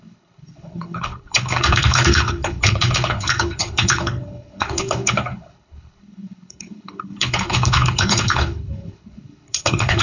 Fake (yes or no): yes